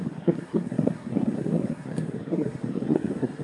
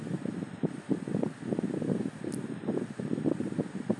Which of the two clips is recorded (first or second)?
second